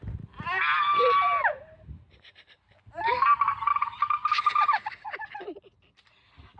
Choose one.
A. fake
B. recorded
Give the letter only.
B